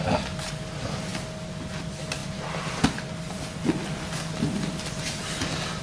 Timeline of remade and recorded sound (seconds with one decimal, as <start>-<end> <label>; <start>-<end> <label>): 0.0-5.8 recorded